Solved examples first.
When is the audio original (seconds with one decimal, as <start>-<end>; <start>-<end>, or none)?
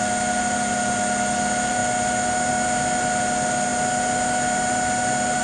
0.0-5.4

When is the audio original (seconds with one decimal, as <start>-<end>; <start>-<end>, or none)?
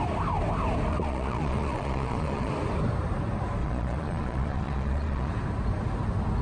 0.0-0.9; 2.5-3.6; 5.3-6.4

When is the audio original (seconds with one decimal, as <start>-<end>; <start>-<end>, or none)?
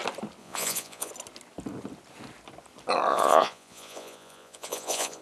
0.0-0.4; 1.1-3.1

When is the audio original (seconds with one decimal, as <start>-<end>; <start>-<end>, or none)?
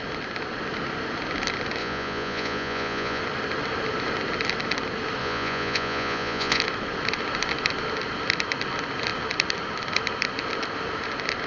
0.0-1.8; 3.2-5.2; 6.6-11.5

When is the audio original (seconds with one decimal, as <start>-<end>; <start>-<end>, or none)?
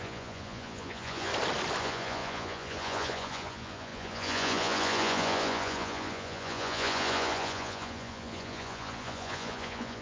1.3-1.8